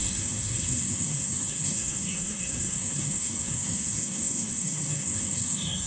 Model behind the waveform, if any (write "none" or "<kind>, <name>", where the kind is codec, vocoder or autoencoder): codec, SNAC